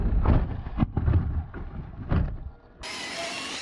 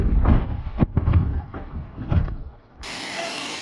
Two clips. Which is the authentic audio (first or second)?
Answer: first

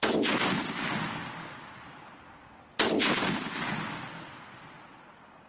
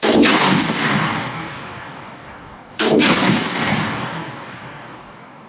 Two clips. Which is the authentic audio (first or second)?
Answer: first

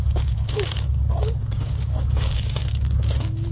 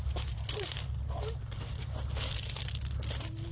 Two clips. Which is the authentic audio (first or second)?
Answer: second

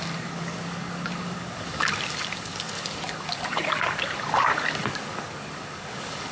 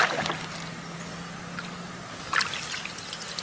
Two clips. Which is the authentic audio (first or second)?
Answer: second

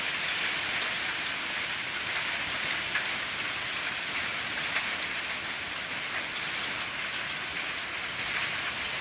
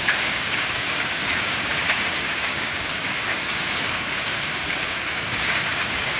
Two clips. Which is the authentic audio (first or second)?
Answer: first